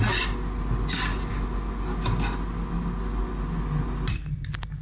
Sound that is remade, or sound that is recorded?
recorded